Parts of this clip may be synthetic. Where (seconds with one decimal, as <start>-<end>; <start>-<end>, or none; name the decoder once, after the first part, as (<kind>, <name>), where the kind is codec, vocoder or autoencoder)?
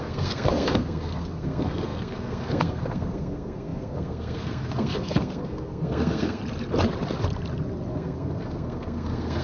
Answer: 0.0-6.4 (codec, SNAC); 7.9-9.4